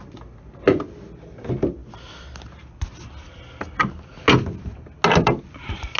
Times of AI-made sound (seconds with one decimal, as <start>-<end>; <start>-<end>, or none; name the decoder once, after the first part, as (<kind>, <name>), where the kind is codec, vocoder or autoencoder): none